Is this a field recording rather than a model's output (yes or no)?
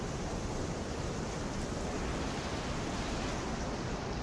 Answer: yes